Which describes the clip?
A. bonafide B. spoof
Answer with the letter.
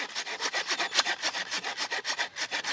A